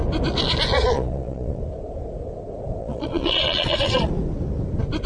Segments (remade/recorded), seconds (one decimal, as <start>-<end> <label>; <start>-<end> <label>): 0.0-0.7 recorded; 0.7-1.6 remade; 1.6-2.8 recorded; 2.8-4.1 remade; 4.1-5.1 recorded